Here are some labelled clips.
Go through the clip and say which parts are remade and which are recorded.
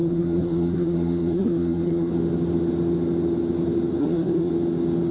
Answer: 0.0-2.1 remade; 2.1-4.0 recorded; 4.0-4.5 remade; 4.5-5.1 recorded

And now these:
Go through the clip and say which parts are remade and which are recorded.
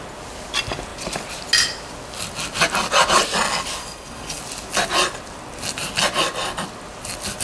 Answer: 0.0-3.8 recorded; 3.8-4.4 remade; 4.4-7.4 recorded